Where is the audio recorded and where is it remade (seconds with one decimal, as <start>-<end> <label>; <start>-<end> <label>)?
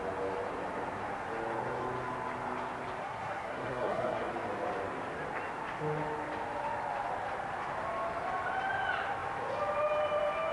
0.0-3.0 recorded; 3.0-4.3 remade; 4.3-10.5 recorded